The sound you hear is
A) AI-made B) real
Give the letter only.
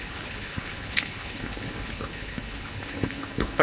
A